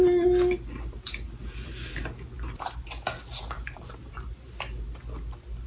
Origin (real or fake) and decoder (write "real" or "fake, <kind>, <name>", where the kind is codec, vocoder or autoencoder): real